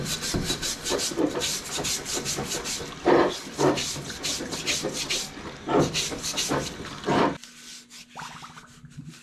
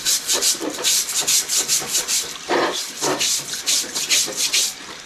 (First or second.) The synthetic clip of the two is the second